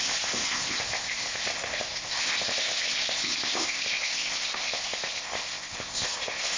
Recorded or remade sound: remade